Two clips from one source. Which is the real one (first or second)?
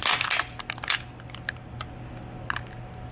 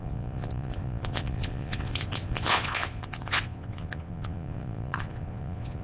first